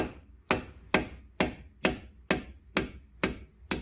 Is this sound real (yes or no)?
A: yes